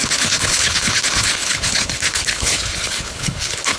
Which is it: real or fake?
fake